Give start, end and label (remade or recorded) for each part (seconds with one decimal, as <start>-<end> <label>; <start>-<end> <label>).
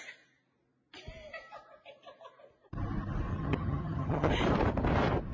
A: 0.0-3.3 recorded; 3.3-4.3 remade; 4.3-5.3 recorded